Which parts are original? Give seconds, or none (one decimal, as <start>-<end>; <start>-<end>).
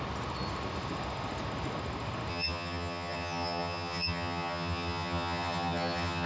0.0-2.3